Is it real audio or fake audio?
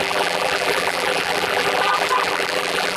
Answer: fake